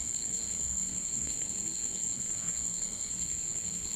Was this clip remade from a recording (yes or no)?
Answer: yes